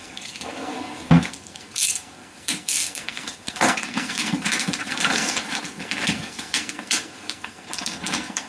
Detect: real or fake fake